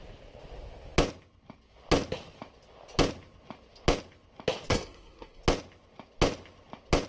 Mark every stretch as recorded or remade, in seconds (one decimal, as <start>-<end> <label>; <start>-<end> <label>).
0.0-4.7 recorded; 4.7-5.4 remade; 5.4-7.1 recorded

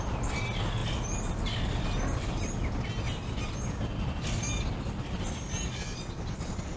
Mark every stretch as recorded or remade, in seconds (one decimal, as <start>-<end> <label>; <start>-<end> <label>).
0.0-6.8 recorded

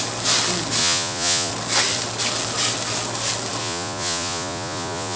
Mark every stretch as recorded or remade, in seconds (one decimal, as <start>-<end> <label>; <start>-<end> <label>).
0.0-0.8 recorded; 0.8-1.5 remade; 1.5-3.6 recorded; 3.6-5.2 remade

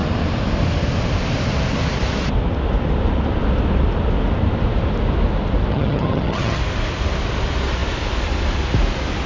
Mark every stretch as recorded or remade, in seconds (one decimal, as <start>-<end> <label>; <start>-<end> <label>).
0.0-5.7 recorded; 5.7-6.6 remade; 6.6-9.3 recorded

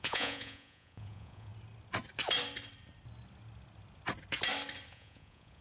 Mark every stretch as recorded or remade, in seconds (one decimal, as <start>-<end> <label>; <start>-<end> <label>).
0.0-1.5 remade; 1.5-4.9 recorded; 4.9-5.6 remade

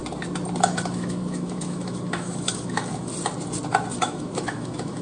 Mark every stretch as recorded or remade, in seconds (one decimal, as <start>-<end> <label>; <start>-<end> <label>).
0.0-0.6 recorded; 0.6-3.1 remade; 3.1-3.9 recorded; 3.9-5.0 remade

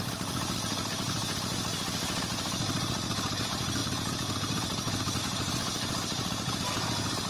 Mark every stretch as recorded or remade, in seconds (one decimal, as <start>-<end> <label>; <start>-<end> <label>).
0.0-1.2 remade; 1.2-3.2 recorded; 3.2-7.3 remade